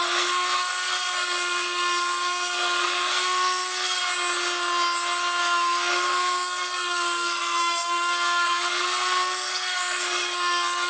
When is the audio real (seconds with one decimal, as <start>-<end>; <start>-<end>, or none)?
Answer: 4.0-5.4